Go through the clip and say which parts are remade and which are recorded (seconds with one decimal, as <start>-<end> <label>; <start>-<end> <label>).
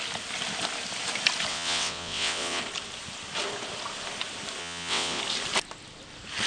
0.0-1.5 recorded; 1.5-2.6 remade; 2.6-4.6 recorded; 4.6-5.2 remade; 5.2-6.5 recorded